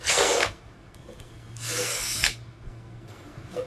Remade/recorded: remade